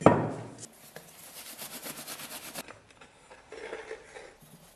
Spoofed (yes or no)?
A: no